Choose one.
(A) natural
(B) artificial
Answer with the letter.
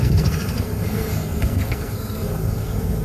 B